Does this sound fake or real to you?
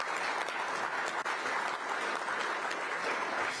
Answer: real